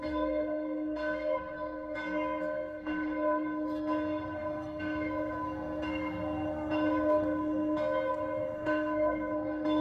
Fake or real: fake